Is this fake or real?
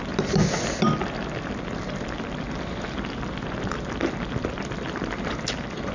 real